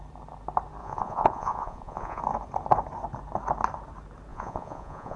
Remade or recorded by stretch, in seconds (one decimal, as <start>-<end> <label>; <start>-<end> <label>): 0.0-0.8 recorded; 0.8-2.2 remade; 2.2-4.3 recorded; 4.3-5.2 remade